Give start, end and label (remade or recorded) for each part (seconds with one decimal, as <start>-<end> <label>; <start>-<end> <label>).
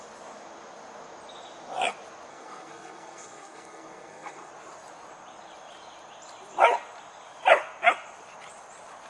0.0-2.3 recorded; 2.3-4.5 remade; 4.5-9.1 recorded